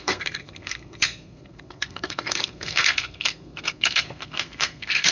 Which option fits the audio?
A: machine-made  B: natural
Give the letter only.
A